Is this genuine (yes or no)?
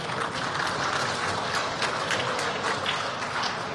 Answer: yes